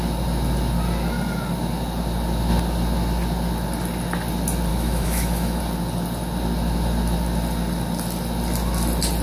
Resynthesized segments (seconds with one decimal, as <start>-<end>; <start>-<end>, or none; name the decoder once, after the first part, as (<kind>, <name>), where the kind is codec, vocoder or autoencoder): 4.7-5.6 (autoencoder, DAC-VAE)